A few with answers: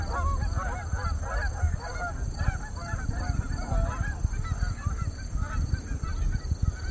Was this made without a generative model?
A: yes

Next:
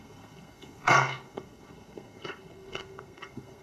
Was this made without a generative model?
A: no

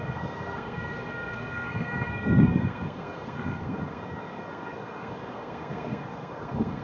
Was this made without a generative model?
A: no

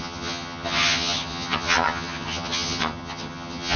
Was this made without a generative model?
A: no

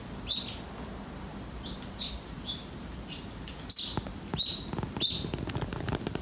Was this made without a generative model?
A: yes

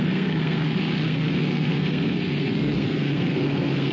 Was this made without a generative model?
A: no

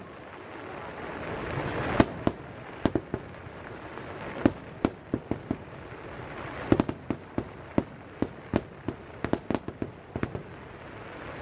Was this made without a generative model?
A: yes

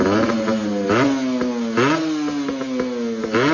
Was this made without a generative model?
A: yes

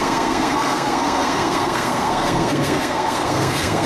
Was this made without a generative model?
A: no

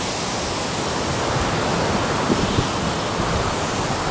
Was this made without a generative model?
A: yes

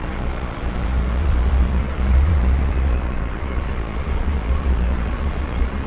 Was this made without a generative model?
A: no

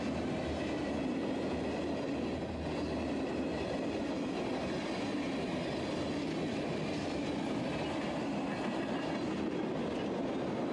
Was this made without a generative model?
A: yes